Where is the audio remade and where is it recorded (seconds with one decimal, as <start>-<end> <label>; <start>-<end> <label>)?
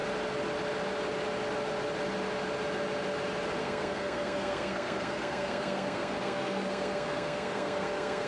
0.0-3.6 recorded; 3.6-8.3 remade